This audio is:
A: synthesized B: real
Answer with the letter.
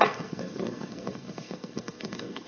A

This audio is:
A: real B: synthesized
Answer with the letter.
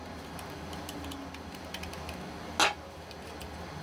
A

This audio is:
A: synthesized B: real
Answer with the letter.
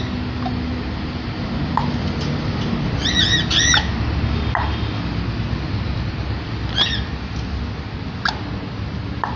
B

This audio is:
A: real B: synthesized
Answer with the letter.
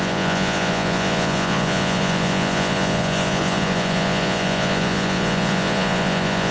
B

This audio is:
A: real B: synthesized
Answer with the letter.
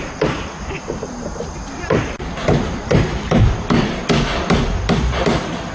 A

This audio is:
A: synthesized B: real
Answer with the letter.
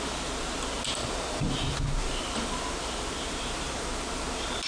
B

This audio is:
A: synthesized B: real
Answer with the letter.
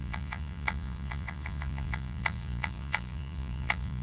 A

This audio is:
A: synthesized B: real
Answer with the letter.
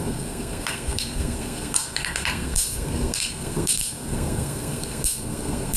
A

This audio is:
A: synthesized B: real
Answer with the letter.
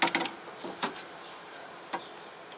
B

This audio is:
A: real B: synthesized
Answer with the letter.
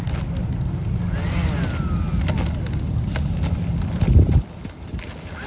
A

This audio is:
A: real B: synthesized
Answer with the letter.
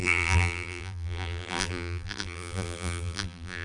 B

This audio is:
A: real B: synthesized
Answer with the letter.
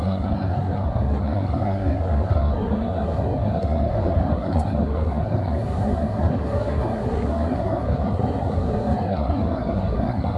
B